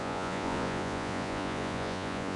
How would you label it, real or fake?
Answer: fake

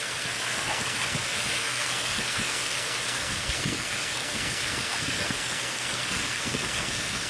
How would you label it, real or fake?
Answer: fake